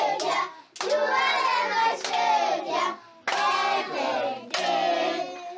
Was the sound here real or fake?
real